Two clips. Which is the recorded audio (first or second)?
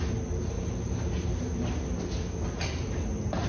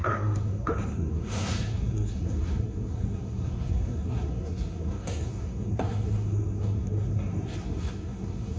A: first